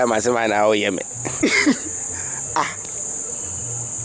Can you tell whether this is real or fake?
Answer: real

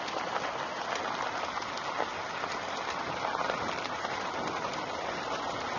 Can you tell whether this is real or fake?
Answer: real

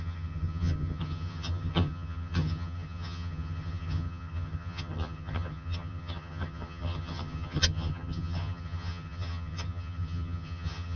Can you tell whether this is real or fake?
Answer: fake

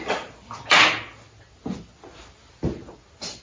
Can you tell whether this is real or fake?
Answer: real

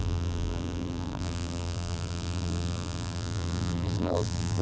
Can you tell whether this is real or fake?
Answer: fake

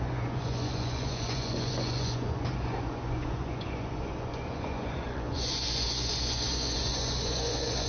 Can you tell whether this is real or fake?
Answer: fake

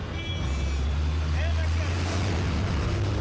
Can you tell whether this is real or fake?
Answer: real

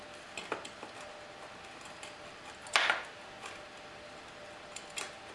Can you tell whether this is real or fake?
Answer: real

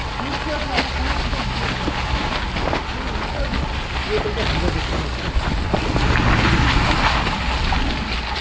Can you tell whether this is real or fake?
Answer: real